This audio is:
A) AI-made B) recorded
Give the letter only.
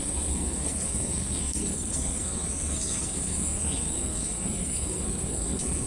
A